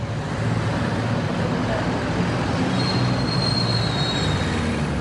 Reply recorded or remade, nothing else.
recorded